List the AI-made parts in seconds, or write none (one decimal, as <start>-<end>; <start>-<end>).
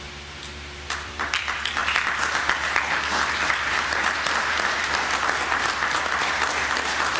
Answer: 0.0-1.8; 3.5-7.2